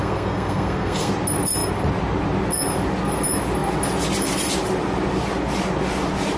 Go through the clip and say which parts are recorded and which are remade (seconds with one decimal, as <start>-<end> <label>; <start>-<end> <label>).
0.0-1.1 remade; 1.1-6.4 recorded